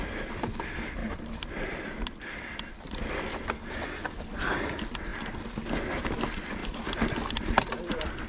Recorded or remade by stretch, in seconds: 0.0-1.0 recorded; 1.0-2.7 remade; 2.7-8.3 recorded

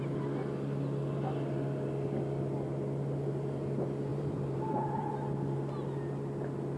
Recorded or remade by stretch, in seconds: 0.0-4.1 recorded; 4.1-5.1 remade; 5.1-6.8 recorded

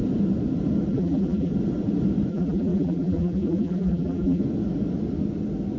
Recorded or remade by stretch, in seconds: 0.0-0.9 recorded; 0.9-1.5 remade; 1.5-2.3 recorded; 2.3-4.4 remade; 4.4-5.8 recorded

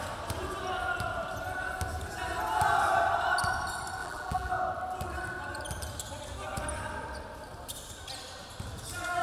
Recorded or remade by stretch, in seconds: 0.0-4.0 recorded; 4.0-4.5 remade; 4.5-9.2 recorded